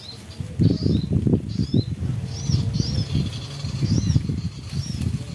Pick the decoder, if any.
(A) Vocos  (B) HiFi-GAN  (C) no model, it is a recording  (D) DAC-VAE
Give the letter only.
C